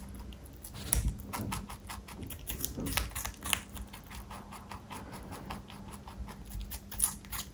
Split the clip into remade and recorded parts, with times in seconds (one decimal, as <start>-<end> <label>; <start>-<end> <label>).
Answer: 0.0-7.5 recorded